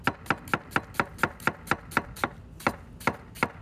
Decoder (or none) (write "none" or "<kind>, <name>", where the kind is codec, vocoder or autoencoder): none